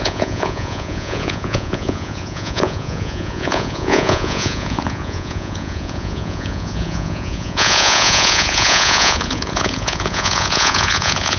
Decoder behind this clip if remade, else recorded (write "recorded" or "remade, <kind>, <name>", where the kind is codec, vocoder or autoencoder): remade, vocoder, Vocos